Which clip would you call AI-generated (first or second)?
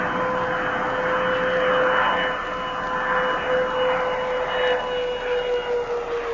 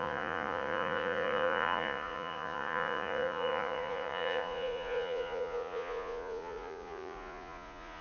second